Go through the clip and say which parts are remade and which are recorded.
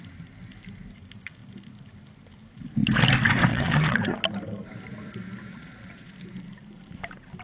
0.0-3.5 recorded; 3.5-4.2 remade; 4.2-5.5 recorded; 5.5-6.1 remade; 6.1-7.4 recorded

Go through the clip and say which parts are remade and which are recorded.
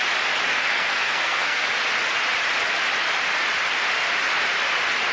0.0-0.5 recorded; 0.5-1.7 remade; 1.7-5.1 recorded